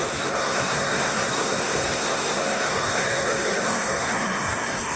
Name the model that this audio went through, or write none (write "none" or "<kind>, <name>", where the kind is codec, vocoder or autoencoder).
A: codec, SNAC